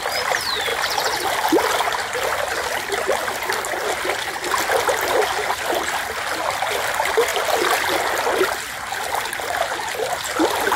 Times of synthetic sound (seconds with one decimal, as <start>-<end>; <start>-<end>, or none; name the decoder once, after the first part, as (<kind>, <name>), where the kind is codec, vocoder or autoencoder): 0.7-1.3 (vocoder, BigVGAN v2); 7.3-8.1